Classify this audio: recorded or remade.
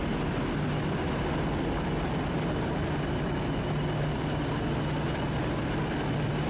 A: recorded